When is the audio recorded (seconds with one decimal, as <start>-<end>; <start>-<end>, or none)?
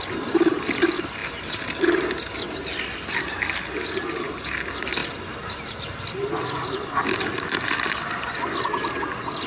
0.0-9.5